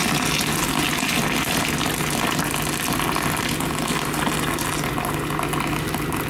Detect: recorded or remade recorded